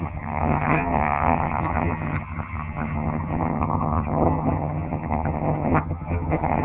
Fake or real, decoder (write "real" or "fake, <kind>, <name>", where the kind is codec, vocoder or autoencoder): fake, vocoder, HiFi-GAN